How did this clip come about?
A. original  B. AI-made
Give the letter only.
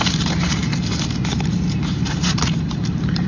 B